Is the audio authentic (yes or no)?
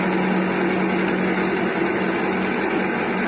yes